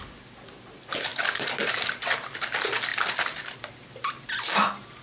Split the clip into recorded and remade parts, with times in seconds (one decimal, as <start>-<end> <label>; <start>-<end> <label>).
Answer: 0.0-2.9 recorded; 2.9-3.7 remade; 3.7-5.0 recorded